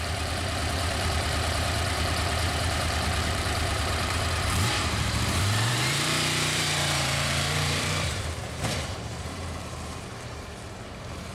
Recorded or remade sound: remade